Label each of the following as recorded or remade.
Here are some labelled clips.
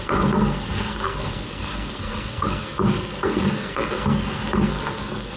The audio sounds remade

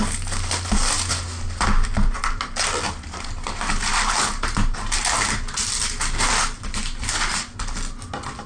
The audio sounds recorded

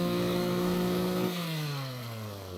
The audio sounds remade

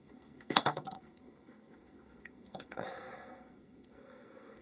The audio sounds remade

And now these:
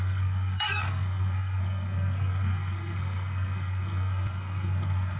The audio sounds remade